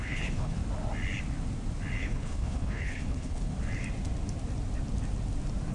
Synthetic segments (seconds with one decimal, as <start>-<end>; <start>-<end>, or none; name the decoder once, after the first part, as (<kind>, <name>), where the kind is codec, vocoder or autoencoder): 0.0-0.6 (codec, HILCodec); 2.0-3.5